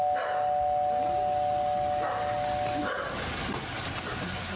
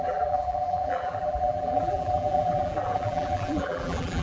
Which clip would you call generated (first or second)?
second